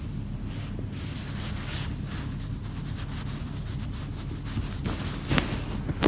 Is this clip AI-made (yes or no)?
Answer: no